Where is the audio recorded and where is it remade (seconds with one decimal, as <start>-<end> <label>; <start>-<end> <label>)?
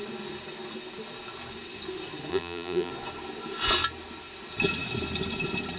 0.0-2.3 recorded; 2.3-2.9 remade; 2.9-5.8 recorded